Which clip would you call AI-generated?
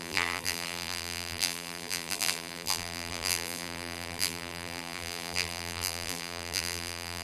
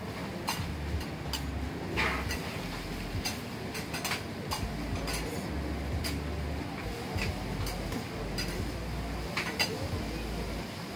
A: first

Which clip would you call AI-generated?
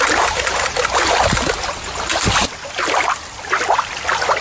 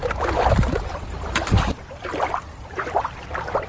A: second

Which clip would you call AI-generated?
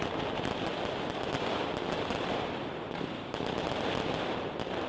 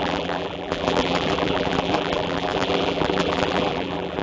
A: second